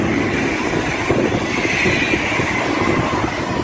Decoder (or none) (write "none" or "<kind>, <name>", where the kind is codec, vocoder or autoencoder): none